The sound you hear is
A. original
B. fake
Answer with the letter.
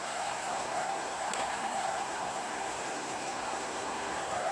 B